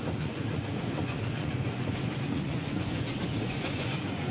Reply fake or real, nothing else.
fake